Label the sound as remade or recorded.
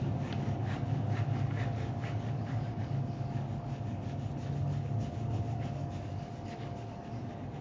remade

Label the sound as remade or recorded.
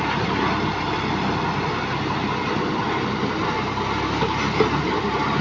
recorded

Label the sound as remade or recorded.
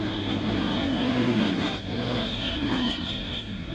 remade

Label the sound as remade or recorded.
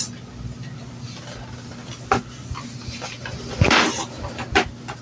recorded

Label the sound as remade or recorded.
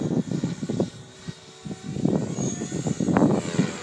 remade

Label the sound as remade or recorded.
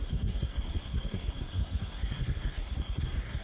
remade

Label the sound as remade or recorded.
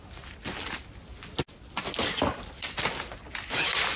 recorded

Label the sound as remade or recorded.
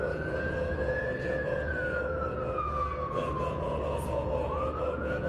remade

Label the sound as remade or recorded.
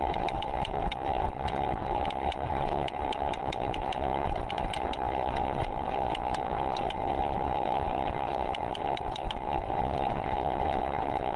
remade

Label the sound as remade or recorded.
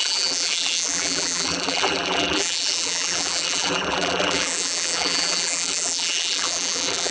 remade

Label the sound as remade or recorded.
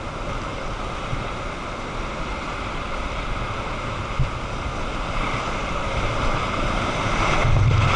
recorded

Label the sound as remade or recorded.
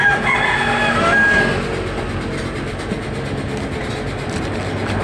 recorded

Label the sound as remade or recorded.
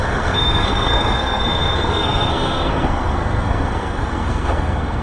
remade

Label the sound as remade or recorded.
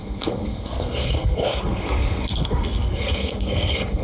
remade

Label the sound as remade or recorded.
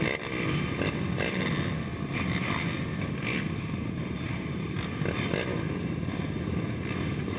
recorded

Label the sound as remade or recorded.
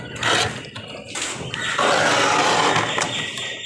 recorded